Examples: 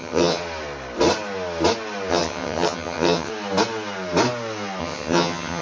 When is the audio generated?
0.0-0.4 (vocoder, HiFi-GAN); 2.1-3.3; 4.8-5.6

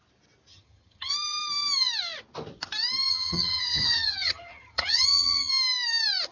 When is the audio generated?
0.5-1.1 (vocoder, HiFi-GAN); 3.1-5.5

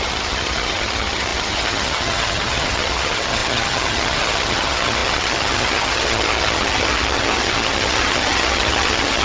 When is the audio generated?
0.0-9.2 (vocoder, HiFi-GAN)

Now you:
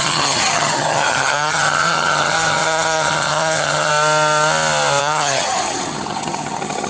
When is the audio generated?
0.0-3.9 (vocoder, HiFi-GAN); 5.0-6.9

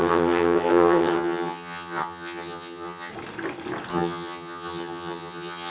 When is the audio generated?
0.0-3.1 (vocoder, HiFi-GAN); 3.9-5.7

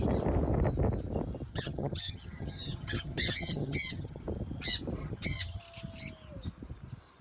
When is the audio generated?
1.5-4.2 (vocoder, HiFi-GAN); 5.0-5.6

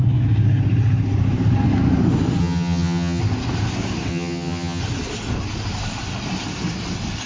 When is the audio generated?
2.4-3.2 (vocoder, HiFi-GAN); 4.1-4.8